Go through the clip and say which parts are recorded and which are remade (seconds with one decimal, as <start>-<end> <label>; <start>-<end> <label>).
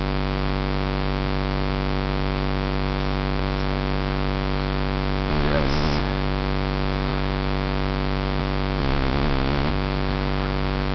0.0-5.3 recorded; 5.3-6.0 remade; 6.0-8.8 recorded; 8.8-9.7 remade; 9.7-10.9 recorded